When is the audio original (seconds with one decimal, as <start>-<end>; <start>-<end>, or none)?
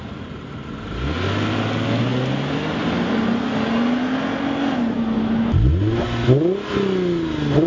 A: 0.0-7.7